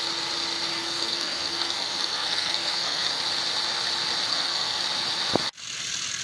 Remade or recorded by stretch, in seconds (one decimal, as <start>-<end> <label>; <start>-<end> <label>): 0.0-0.7 recorded; 0.7-3.2 remade; 3.2-4.3 recorded; 4.3-4.8 remade; 4.8-6.2 recorded